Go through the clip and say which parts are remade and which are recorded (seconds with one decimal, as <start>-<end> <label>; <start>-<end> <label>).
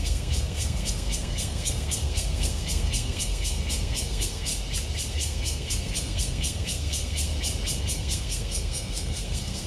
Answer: 0.0-4.5 remade; 4.5-5.1 recorded; 5.1-7.3 remade; 7.3-7.8 recorded; 7.8-9.7 remade